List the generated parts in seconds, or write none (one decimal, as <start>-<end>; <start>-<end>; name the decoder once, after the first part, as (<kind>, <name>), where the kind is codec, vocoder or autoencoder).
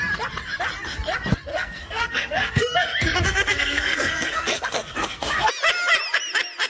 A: 1.5-5.5 (codec, SNAC)